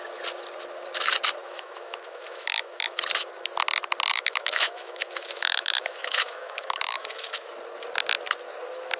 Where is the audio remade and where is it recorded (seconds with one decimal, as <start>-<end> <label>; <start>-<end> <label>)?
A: 0.0-1.4 recorded; 1.4-3.0 remade; 3.0-4.1 recorded; 4.1-7.5 remade; 7.5-9.0 recorded